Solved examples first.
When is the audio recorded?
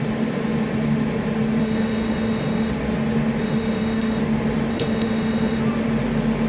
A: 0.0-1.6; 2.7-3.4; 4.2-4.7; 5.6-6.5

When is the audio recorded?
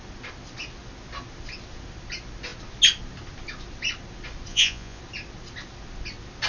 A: 0.0-4.5; 5.0-6.5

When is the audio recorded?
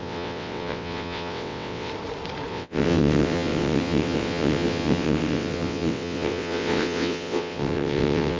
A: 1.9-2.5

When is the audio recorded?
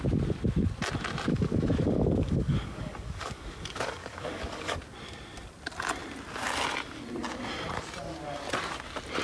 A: 0.0-1.3; 4.8-9.2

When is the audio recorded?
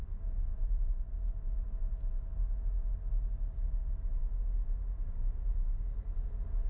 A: 0.0-0.5; 1.1-5.2; 5.7-6.7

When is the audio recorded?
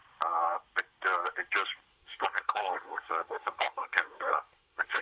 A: 0.0-1.9